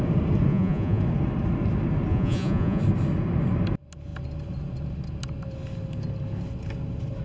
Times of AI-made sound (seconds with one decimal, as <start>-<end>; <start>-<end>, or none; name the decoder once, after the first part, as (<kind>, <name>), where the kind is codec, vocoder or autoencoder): 0.5-1.0 (vocoder, Vocos); 2.1-2.8